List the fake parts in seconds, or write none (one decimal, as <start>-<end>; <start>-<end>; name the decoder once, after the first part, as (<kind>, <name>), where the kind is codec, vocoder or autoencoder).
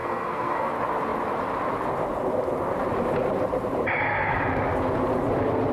0.0-0.7 (codec, SNAC)